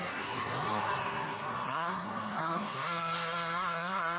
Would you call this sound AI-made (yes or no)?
yes